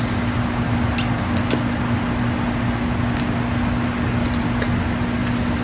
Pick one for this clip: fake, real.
real